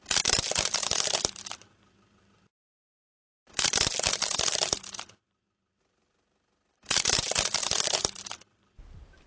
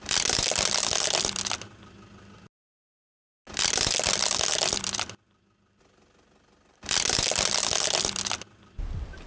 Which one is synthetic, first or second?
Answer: first